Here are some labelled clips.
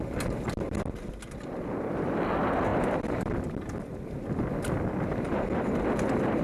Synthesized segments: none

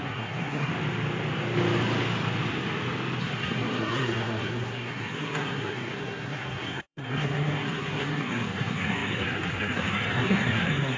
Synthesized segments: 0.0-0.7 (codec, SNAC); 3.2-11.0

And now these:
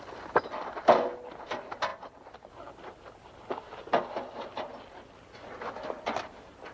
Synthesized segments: none